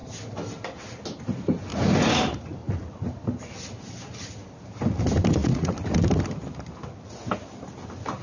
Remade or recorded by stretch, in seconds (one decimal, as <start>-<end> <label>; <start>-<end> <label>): 0.0-1.7 recorded; 1.7-2.2 remade; 2.2-5.4 recorded; 5.4-6.0 remade; 6.0-8.2 recorded